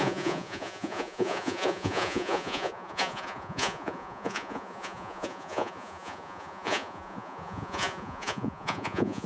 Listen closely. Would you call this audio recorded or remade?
remade